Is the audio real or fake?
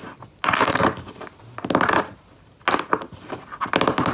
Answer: real